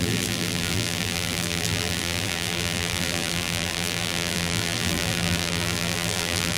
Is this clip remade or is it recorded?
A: remade